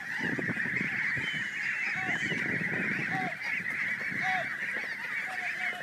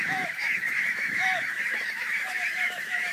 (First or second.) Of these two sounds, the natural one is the first